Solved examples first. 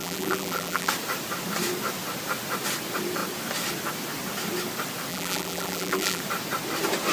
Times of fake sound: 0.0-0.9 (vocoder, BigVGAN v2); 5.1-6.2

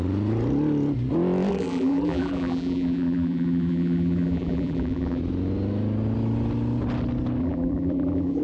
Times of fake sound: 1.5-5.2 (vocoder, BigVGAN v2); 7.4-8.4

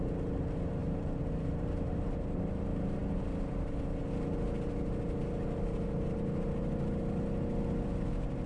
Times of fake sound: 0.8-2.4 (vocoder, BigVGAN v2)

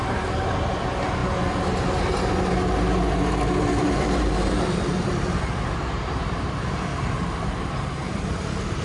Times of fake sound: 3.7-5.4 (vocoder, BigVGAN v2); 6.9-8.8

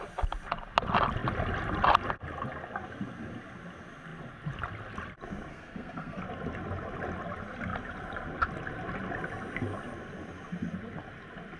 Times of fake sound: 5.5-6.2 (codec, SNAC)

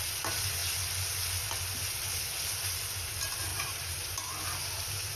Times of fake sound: 3.5-4.2 (vocoder, BigVGAN v2)

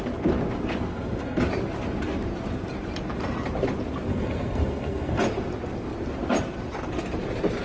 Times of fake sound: 0.9-1.4 (codec, SNAC); 4.1-5.2

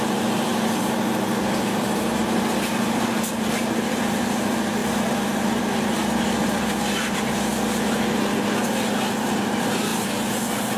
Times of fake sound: 0.0-7.5 (vocoder, BigVGAN v2); 9.2-10.8